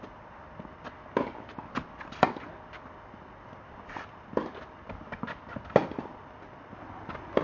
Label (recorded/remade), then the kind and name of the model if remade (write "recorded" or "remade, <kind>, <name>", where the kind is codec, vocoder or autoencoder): recorded